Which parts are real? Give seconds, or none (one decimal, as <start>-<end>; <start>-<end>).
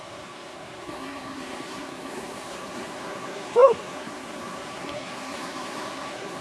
none